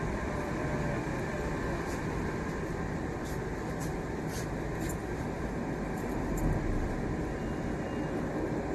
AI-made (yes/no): no